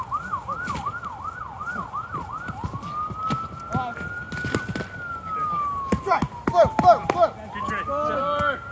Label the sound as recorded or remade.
recorded